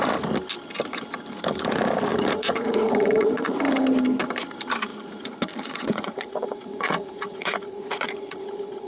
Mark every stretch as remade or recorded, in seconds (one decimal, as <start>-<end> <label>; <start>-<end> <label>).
0.0-2.1 recorded; 2.1-3.6 remade; 3.6-4.9 recorded; 4.9-8.9 remade